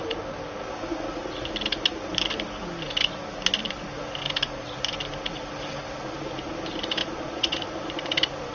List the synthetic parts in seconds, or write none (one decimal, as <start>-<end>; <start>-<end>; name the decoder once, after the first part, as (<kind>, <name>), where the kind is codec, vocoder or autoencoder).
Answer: 7.0-7.6 (vocoder, Vocos)